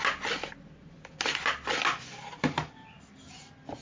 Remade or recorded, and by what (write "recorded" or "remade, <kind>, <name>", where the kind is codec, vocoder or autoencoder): recorded